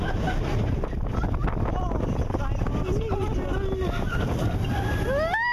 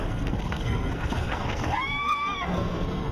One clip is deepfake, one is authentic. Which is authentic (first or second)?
first